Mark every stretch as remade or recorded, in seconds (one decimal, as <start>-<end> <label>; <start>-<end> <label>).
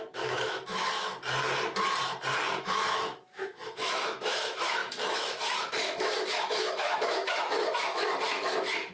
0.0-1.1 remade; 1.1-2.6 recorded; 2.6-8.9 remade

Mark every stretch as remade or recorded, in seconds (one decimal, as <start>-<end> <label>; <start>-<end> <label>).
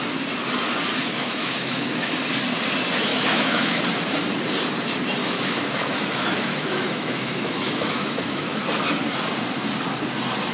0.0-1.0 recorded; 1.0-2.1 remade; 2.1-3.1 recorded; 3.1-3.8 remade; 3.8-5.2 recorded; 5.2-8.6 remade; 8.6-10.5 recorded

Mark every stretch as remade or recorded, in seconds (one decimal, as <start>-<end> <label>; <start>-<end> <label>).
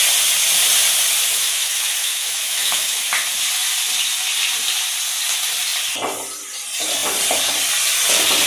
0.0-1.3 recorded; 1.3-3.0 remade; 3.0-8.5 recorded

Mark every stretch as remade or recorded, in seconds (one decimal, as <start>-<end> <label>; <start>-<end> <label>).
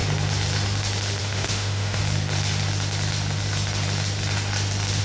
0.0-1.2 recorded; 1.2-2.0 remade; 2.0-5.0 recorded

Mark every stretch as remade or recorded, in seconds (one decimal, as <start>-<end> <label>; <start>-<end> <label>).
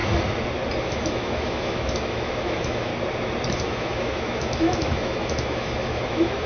0.0-0.8 recorded; 0.8-2.9 remade; 2.9-3.5 recorded; 3.5-6.5 remade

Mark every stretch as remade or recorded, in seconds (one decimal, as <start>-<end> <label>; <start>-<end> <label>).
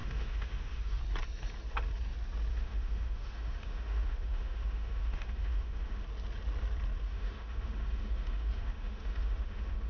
0.0-1.0 remade; 1.0-2.5 recorded; 2.5-6.0 remade; 6.0-7.1 recorded; 7.1-9.9 remade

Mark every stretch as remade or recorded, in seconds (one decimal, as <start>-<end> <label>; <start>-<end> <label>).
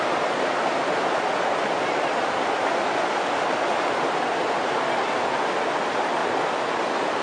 0.0-7.2 recorded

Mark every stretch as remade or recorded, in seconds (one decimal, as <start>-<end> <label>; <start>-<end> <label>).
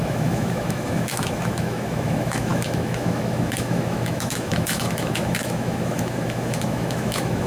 0.0-7.5 remade